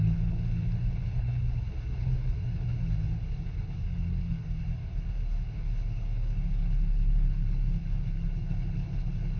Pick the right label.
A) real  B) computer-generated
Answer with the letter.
B